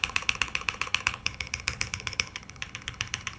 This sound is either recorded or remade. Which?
remade